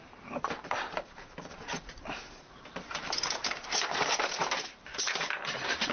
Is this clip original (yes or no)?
no